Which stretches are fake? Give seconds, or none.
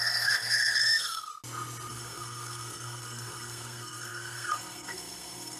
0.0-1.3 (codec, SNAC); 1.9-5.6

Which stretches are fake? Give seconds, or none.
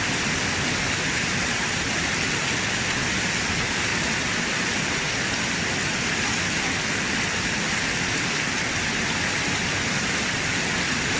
none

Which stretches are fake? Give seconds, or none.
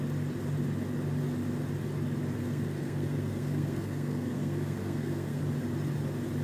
2.4-5.4 (codec, SNAC)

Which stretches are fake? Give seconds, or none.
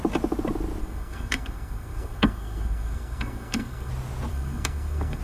0.8-3.9 (codec, SNAC); 4.3-5.2